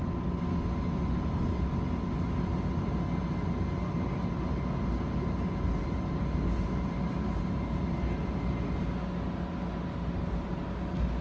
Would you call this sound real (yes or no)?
yes